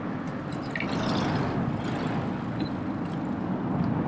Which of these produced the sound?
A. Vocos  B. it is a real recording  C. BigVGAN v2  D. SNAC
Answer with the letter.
B